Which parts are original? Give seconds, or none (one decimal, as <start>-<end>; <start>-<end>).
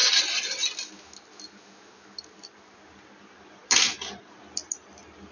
0.0-5.3